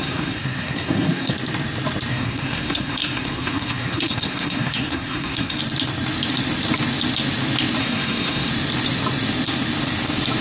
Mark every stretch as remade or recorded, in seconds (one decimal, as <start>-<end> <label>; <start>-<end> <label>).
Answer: 0.0-1.3 remade; 1.3-2.1 recorded; 2.1-5.6 remade; 5.6-7.8 recorded; 7.8-8.5 remade; 8.5-10.4 recorded